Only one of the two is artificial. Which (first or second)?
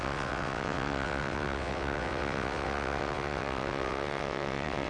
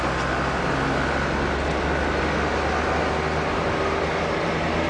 first